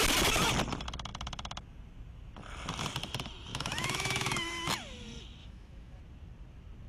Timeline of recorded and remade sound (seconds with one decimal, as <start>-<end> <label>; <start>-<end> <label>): 0.0-3.5 recorded; 3.5-4.7 remade; 4.7-5.4 recorded; 5.4-6.0 remade; 6.0-6.9 recorded